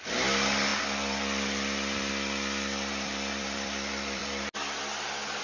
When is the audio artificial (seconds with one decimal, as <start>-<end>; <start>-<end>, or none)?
0.0-4.2